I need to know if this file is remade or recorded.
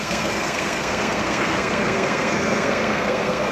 remade